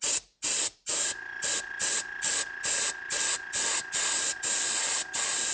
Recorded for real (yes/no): yes